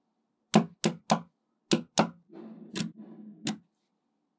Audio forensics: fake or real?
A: real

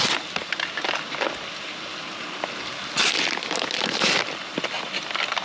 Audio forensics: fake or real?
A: real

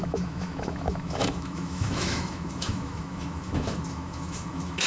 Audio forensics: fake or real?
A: fake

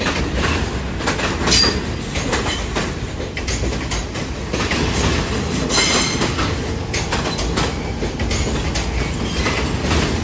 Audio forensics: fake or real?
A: real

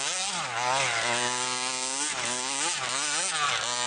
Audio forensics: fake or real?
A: real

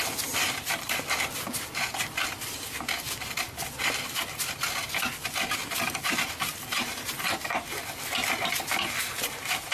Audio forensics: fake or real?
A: real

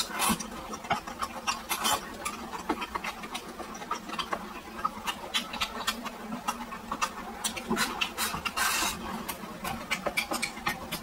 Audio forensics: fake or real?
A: real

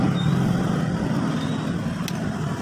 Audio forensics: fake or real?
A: real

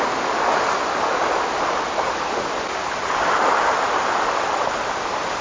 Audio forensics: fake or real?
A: real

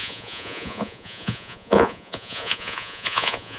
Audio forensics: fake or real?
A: fake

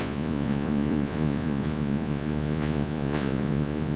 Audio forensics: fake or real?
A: fake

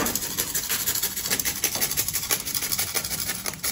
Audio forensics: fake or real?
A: real